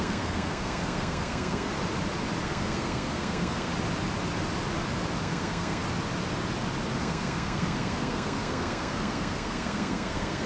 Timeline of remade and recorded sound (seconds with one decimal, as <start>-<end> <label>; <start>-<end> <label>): 0.0-1.7 remade; 1.7-2.4 recorded; 2.4-3.7 remade; 3.7-5.2 recorded; 5.2-5.8 remade; 5.8-7.0 recorded; 7.0-10.5 remade